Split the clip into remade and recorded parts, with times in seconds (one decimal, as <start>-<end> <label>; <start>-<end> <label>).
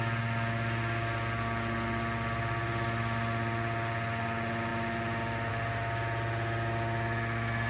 0.0-7.7 recorded